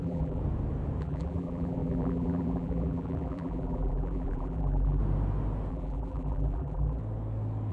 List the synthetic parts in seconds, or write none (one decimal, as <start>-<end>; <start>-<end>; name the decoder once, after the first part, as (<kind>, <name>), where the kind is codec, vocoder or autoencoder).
0.0-0.4 (vocoder, BigVGAN v2); 1.0-5.0; 5.7-7.0